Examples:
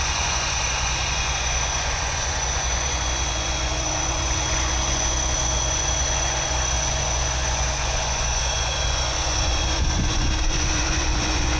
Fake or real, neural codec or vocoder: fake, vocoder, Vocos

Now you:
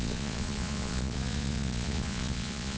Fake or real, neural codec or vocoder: fake, vocoder, Vocos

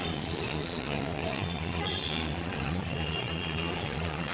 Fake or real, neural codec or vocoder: fake, vocoder, Vocos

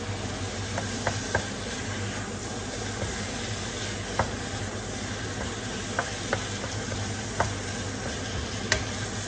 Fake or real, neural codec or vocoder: real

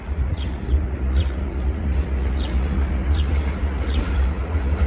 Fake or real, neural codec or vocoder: fake, vocoder, Vocos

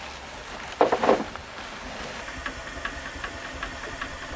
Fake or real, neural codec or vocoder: real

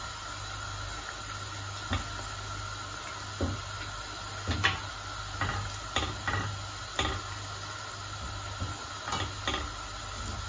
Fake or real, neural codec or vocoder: real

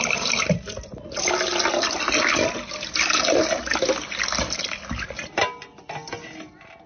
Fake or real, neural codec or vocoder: real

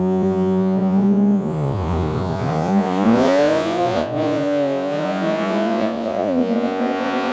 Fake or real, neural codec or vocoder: fake, vocoder, Vocos